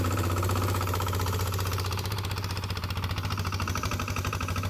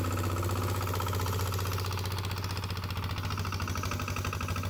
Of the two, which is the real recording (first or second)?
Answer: second